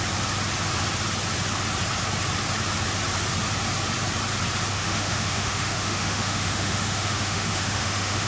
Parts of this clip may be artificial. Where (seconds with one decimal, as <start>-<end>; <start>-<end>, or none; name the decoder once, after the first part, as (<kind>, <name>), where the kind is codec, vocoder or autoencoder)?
4.7-8.3 (autoencoder, DAC-VAE)

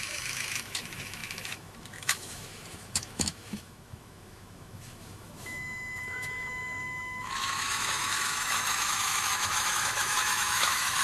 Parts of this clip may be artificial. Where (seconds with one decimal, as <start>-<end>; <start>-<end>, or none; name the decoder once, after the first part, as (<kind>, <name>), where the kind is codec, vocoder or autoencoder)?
0.0-11.0 (autoencoder, DAC-VAE)

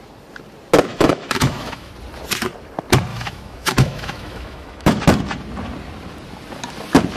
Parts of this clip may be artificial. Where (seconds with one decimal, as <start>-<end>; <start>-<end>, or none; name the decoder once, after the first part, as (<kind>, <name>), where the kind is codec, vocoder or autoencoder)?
0.9-1.9 (autoencoder, DAC-VAE); 3.1-5.0

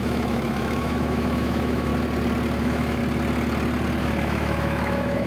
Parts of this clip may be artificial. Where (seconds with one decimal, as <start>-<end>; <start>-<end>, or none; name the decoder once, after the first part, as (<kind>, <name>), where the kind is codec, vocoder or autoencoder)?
0.0-1.9 (autoencoder, DAC-VAE); 2.6-3.0; 4.0-5.3

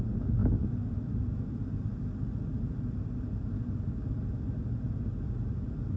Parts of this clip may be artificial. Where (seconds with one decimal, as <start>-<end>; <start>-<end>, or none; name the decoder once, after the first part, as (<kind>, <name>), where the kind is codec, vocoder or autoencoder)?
none

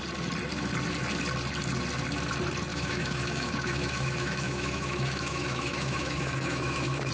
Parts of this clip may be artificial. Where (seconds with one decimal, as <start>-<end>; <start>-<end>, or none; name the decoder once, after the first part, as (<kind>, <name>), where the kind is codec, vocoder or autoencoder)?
2.7-7.1 (autoencoder, DAC-VAE)